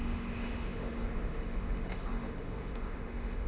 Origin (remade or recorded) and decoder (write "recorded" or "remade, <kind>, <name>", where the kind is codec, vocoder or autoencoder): remade, autoencoder, DAC-VAE